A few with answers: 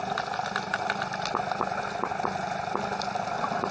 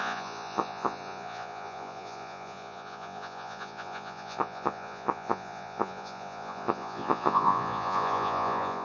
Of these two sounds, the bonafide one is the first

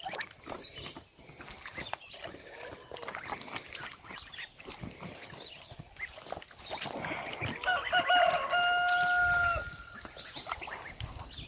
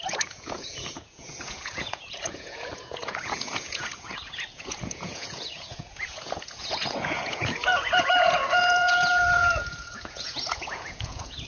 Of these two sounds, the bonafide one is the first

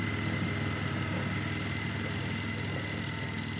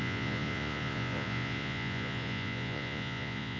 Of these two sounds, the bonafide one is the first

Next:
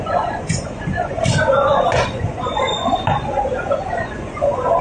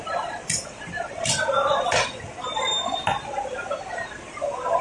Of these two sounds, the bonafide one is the second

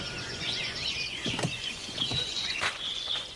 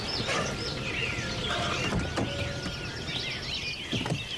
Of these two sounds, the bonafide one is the second